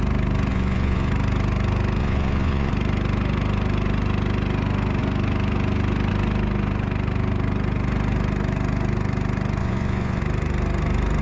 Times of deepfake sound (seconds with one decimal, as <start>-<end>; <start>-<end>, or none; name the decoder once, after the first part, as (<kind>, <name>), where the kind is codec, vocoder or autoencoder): 0.5-1.1 (vocoder, Vocos); 2.0-2.7; 9.6-10.2